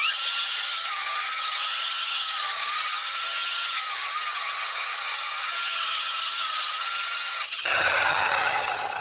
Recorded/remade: remade